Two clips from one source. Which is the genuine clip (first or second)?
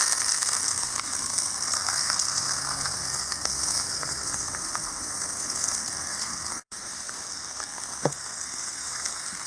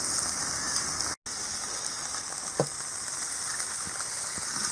second